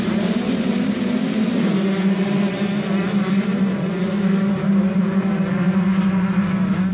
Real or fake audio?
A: real